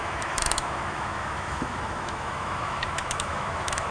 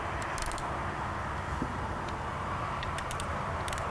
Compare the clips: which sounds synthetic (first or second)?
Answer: first